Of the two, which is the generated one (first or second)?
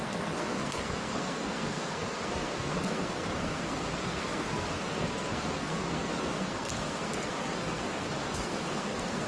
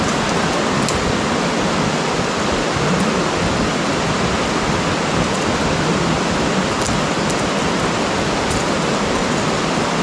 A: first